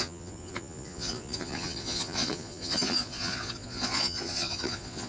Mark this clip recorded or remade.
remade